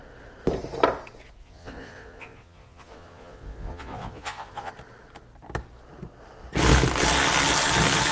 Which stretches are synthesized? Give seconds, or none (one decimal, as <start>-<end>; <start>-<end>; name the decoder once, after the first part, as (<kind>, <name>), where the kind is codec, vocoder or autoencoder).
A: 1.4-4.7 (vocoder, Vocos)